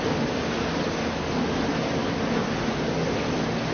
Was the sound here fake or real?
real